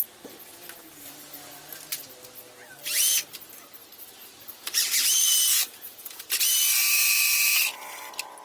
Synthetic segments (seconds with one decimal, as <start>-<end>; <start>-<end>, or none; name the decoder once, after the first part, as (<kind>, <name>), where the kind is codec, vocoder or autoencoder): 5.5-6.3 (vocoder, Vocos)